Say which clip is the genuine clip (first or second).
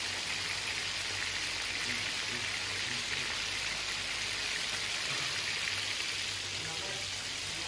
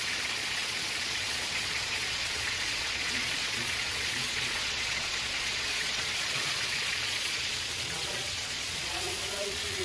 first